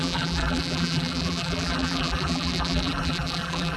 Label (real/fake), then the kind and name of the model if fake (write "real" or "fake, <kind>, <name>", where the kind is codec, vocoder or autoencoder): fake, vocoder, BigVGAN v2